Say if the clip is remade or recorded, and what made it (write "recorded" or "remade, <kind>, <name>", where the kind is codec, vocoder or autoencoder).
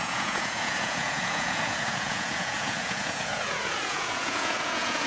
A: remade, vocoder, Vocos